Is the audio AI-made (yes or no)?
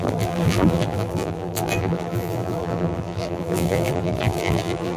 yes